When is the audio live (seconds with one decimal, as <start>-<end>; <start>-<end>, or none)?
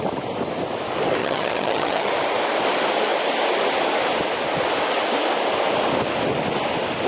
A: 0.0-1.2; 2.1-7.1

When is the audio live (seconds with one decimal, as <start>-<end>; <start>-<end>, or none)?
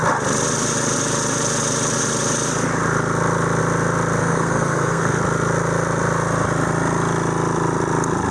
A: 0.0-4.2; 5.2-8.3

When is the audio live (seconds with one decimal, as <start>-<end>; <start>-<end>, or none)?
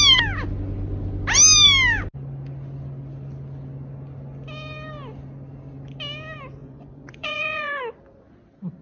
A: 0.0-6.6; 7.8-8.8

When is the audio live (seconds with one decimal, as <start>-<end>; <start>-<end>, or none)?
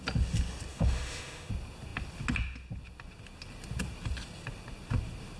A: 0.0-0.7; 1.5-5.4